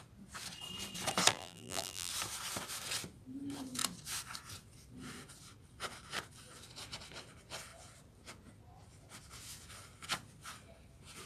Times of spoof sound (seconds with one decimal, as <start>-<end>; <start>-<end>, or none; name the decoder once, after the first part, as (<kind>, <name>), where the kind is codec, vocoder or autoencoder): 1.3-2.1 (vocoder, BigVGAN v2)